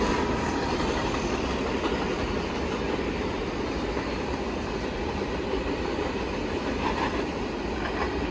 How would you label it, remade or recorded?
recorded